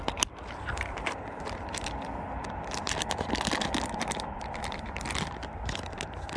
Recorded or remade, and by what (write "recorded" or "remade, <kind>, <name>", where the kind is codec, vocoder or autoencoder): remade, vocoder, BigVGAN v2